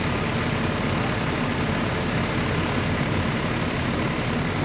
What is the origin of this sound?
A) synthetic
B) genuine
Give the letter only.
B